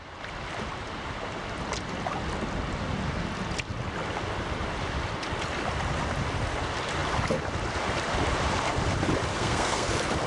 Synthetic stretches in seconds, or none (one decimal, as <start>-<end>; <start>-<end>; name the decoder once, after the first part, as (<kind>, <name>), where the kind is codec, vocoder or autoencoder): 9.3-9.9 (codec, SNAC)